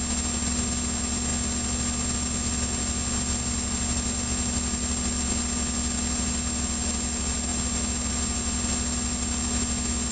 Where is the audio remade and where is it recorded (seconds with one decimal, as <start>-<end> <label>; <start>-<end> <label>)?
0.0-10.1 recorded